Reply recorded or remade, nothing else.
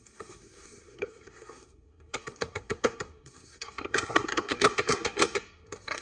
remade